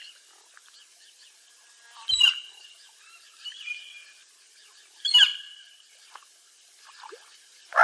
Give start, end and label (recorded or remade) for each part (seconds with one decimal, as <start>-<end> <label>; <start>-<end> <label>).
0.0-0.9 recorded; 0.9-3.5 remade; 3.5-5.3 recorded; 5.3-5.9 remade; 5.9-7.8 recorded